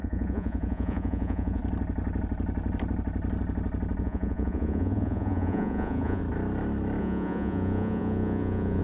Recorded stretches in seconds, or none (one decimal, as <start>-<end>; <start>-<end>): 1.6-4.0; 6.2-7.0